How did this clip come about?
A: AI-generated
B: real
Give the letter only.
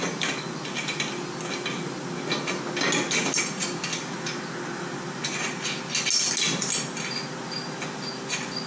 B